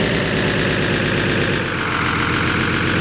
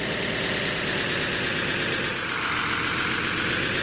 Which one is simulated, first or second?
second